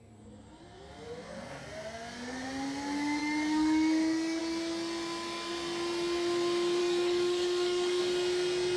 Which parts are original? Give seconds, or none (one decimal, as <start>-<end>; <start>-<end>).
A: 0.0-3.2; 4.4-6.8; 8.0-8.8

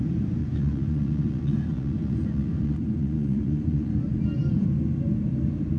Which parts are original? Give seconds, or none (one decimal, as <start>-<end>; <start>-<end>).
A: 0.0-0.4; 3.9-5.8

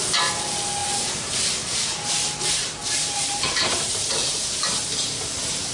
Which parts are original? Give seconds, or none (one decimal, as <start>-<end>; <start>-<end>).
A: 0.0-0.8; 2.1-2.8; 4.6-5.7

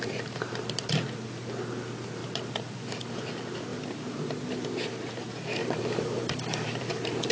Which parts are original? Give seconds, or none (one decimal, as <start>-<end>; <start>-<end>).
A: 0.0-5.6